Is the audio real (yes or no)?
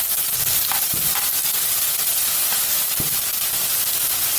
yes